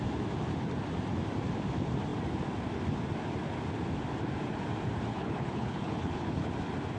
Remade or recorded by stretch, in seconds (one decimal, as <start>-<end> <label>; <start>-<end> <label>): 0.0-5.1 recorded; 5.1-6.5 remade; 6.5-7.0 recorded